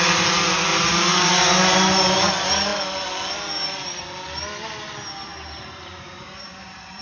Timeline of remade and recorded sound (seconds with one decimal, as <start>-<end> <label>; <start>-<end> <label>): 0.0-0.7 recorded; 0.7-2.3 remade; 2.3-5.3 recorded; 5.3-7.0 remade